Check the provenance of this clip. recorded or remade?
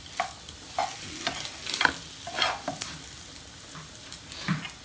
recorded